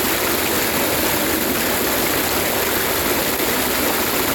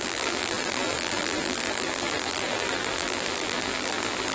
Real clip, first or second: first